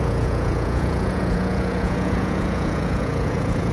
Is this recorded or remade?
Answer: remade